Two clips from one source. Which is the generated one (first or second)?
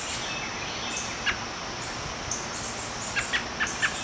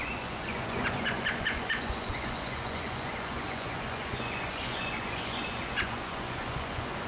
second